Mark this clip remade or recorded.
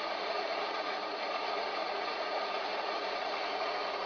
remade